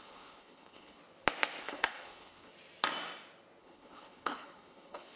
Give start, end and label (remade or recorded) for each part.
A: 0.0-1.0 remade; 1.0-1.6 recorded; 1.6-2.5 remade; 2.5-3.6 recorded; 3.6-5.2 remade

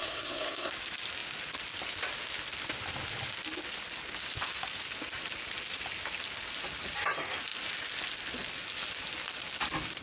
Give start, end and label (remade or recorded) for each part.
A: 0.0-0.7 remade; 0.7-10.0 recorded

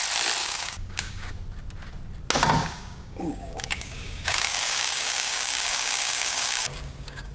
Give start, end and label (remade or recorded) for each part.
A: 0.0-0.4 recorded; 0.4-1.3 remade; 1.3-2.6 recorded; 2.6-7.3 remade

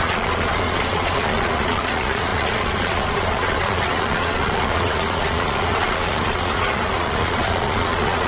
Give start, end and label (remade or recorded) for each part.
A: 0.0-8.3 remade

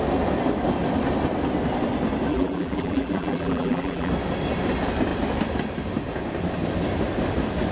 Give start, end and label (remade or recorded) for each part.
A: 0.0-2.3 recorded; 2.3-4.1 remade; 4.1-7.7 recorded

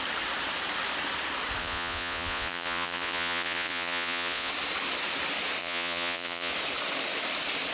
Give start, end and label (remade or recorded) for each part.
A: 0.0-1.6 recorded; 1.6-4.5 remade; 4.5-5.6 recorded; 5.6-6.5 remade; 6.5-7.7 recorded

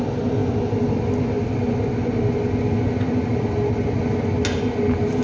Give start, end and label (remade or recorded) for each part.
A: 0.0-5.2 recorded

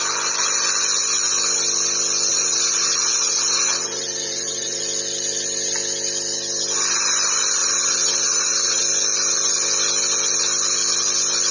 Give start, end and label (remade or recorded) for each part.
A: 0.0-2.3 recorded; 2.3-4.8 remade; 4.8-7.6 recorded; 7.6-8.8 remade; 8.8-11.5 recorded